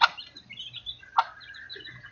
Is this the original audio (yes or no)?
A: yes